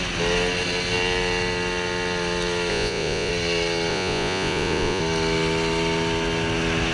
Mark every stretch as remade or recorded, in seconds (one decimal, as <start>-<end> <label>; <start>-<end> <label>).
0.0-2.7 recorded; 2.7-3.3 remade; 3.3-3.9 recorded; 3.9-5.0 remade; 5.0-6.9 recorded